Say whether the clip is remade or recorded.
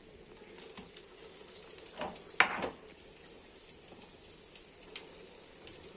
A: recorded